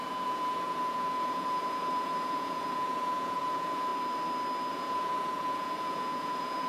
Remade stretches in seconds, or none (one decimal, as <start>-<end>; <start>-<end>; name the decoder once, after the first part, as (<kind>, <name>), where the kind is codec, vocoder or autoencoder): 0.0-3.9 (vocoder, Vocos); 4.7-6.7